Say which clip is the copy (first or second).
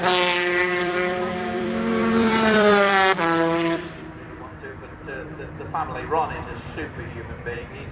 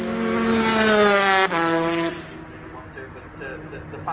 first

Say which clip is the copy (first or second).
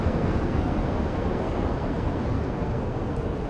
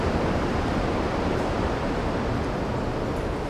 first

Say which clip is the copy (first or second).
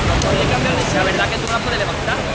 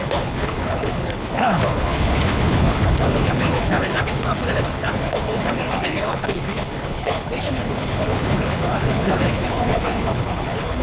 second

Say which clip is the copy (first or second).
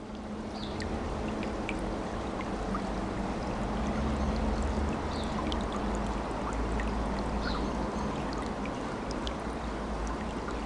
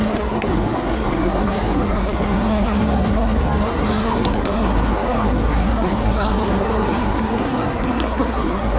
second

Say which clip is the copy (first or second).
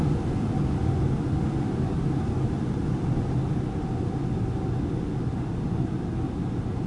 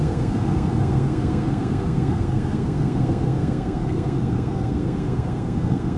second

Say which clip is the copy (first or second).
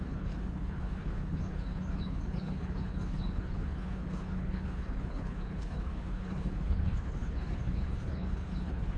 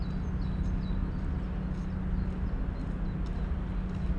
first